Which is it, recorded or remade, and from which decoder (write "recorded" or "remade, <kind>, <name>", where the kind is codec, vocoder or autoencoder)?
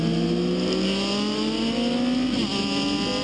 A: recorded